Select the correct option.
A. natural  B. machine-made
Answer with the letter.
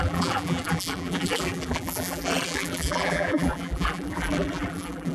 B